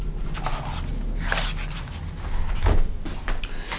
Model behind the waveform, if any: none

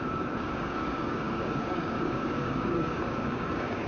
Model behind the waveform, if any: codec, DAC